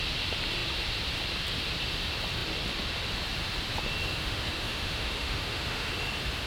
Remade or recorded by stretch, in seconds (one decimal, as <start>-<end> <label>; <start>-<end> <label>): 0.0-4.1 recorded; 4.1-5.9 remade; 5.9-6.5 recorded